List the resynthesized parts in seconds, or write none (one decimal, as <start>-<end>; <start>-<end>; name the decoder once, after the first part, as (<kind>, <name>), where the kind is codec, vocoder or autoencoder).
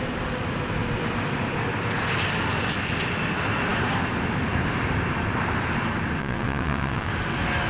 6.2-7.1 (vocoder, WaveNeXt)